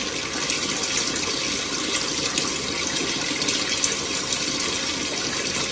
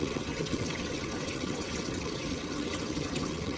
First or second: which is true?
first